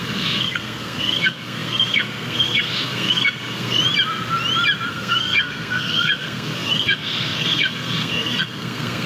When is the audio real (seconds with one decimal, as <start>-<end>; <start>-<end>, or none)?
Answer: 3.8-4.9